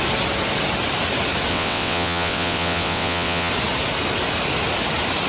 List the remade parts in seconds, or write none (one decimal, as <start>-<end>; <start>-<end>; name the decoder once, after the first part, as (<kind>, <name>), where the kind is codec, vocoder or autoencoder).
1.5-3.5 (vocoder, WaveNeXt)